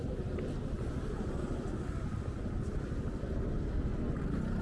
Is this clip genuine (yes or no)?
yes